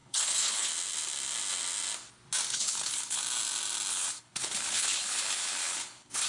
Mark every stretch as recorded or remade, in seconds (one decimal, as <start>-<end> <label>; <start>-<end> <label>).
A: 0.0-0.7 remade; 0.7-2.5 recorded; 2.5-3.2 remade; 3.2-3.9 recorded; 3.9-6.3 remade

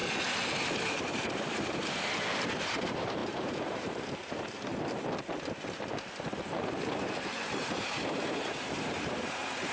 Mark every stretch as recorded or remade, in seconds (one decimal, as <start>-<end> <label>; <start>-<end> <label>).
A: 0.0-0.7 recorded; 0.7-4.7 remade; 4.7-7.1 recorded; 7.1-9.7 remade

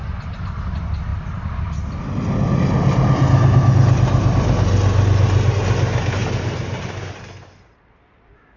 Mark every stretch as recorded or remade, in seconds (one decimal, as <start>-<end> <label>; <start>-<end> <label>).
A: 0.0-8.6 recorded

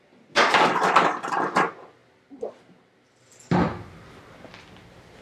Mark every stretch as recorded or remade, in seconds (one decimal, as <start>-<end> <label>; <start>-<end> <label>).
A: 0.0-5.2 recorded

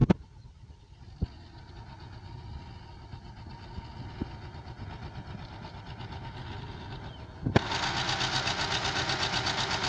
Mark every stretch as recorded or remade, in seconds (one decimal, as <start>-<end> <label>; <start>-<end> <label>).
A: 0.0-9.9 recorded

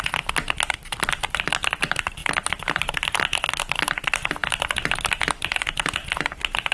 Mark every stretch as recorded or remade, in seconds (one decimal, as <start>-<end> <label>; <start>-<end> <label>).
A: 0.0-6.7 recorded

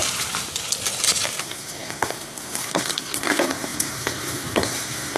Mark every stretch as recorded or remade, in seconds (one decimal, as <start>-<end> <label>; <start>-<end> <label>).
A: 0.0-1.4 recorded; 1.4-5.2 remade

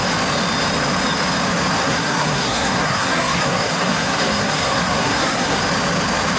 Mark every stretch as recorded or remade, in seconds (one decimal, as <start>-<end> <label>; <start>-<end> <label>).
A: 0.0-1.8 recorded; 1.8-5.6 remade; 5.6-6.4 recorded